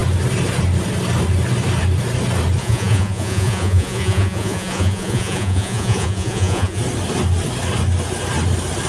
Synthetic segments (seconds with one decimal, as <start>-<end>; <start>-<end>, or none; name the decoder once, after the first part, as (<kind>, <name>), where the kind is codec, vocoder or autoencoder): 2.6-6.8 (vocoder, Vocos)